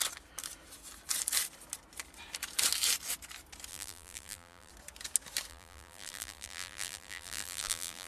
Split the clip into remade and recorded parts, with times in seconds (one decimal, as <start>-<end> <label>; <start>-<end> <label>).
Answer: 0.0-3.7 recorded; 3.7-4.7 remade; 4.7-5.5 recorded; 5.5-8.1 remade